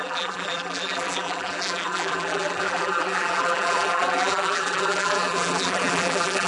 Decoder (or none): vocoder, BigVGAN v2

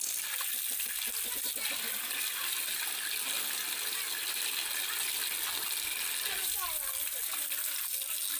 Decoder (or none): none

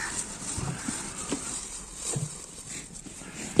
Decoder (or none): vocoder, BigVGAN v2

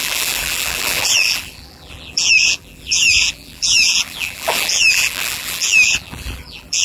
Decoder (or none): vocoder, BigVGAN v2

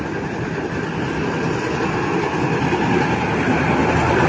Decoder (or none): none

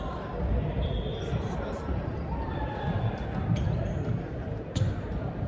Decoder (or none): vocoder, BigVGAN v2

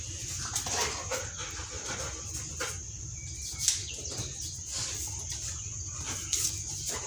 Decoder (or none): none